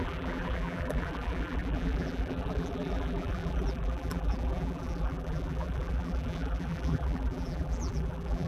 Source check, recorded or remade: remade